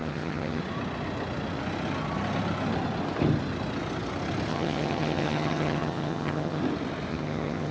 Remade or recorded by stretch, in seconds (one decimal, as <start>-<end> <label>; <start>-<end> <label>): 0.0-0.6 remade; 0.6-4.5 recorded; 4.5-6.6 remade; 6.6-7.1 recorded; 7.1-7.7 remade